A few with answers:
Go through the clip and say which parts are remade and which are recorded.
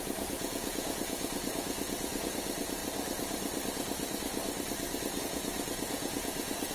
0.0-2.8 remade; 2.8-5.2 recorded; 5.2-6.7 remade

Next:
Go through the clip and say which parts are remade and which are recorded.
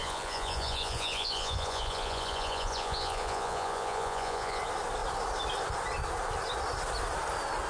0.0-4.6 remade; 4.6-7.7 recorded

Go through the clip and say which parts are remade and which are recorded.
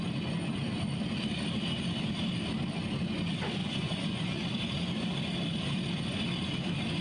0.0-3.6 recorded; 3.6-4.5 remade; 4.5-7.0 recorded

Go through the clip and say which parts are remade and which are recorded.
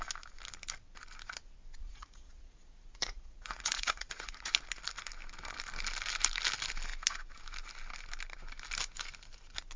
0.0-1.8 recorded; 1.8-4.5 remade; 4.5-9.8 recorded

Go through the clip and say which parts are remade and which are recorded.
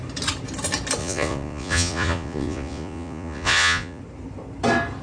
0.0-1.0 recorded; 1.0-4.0 remade; 4.0-5.0 recorded